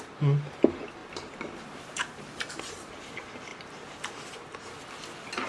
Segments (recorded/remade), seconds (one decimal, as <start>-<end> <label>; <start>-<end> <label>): 0.0-1.0 recorded; 1.0-2.7 remade; 2.7-3.5 recorded; 3.5-4.1 remade; 4.1-5.5 recorded